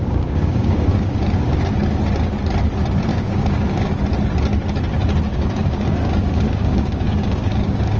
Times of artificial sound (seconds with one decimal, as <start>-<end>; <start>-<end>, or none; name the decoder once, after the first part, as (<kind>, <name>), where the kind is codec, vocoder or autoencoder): 0.0-1.5 (codec, DAC); 3.1-3.9; 5.3-8.0